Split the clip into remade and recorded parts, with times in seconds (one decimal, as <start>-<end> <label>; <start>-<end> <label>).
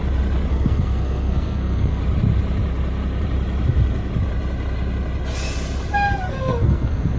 0.0-0.5 recorded; 0.5-2.0 remade; 2.0-6.3 recorded; 6.3-7.2 remade